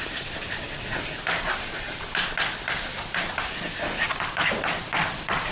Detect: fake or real fake